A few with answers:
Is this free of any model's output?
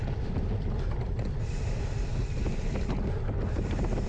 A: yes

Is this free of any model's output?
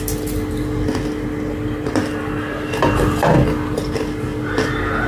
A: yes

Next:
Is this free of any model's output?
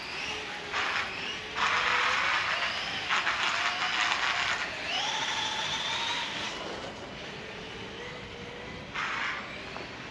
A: yes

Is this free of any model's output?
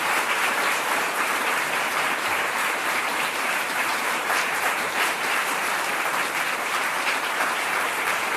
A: no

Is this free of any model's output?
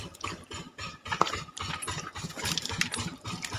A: no